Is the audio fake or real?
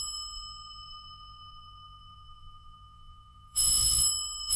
fake